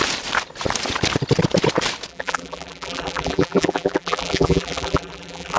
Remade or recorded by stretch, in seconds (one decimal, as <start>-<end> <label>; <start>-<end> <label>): 0.0-2.1 recorded; 2.1-5.6 remade